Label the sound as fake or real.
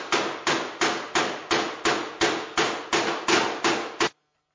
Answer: real